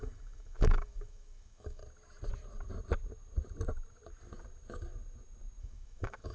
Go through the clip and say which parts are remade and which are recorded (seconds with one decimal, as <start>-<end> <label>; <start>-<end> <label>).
0.0-1.8 remade; 1.8-5.6 recorded; 5.6-6.3 remade